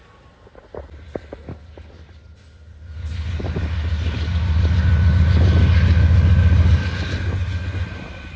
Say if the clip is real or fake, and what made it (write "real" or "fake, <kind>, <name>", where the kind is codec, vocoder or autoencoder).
real